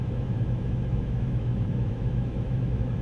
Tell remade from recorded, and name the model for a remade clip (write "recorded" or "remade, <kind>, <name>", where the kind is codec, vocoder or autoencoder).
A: remade, autoencoder, DAC-VAE